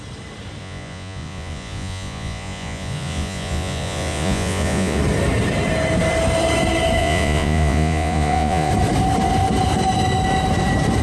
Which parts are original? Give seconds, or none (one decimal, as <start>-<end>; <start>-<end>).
0.0-0.6; 5.0-7.0; 8.7-11.0